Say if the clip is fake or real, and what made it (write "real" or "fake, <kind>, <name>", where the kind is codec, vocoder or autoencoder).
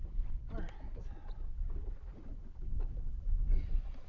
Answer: real